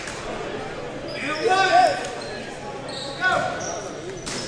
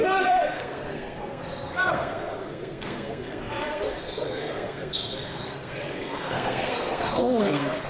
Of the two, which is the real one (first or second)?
first